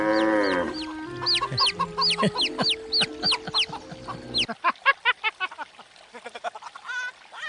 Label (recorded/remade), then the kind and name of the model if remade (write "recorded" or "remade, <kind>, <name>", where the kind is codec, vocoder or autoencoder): recorded